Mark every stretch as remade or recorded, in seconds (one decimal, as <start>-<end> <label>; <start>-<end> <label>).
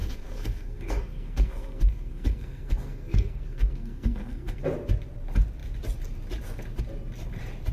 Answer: 0.0-4.6 remade; 4.6-7.7 recorded